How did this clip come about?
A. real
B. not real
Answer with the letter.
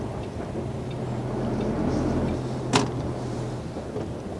A